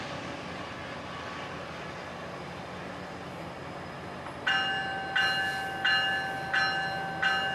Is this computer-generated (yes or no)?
no